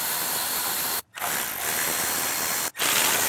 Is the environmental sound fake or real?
real